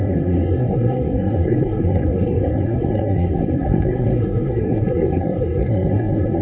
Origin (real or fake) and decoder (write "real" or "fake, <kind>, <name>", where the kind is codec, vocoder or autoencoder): fake, codec, SNAC